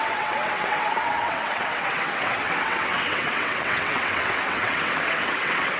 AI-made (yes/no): yes